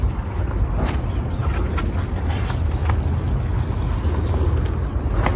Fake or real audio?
real